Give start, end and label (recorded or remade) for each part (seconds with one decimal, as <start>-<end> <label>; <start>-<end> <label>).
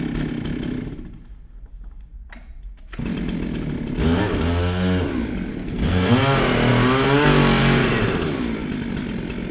0.0-5.5 recorded; 5.5-6.1 remade; 6.1-9.5 recorded